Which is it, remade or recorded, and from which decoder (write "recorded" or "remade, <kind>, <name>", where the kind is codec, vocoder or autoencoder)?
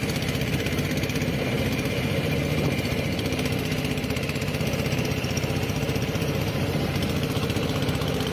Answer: remade, vocoder, BigVGAN v2